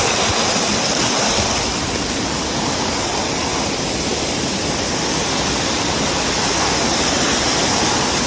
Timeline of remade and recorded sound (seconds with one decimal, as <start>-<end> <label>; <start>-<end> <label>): 0.0-8.3 recorded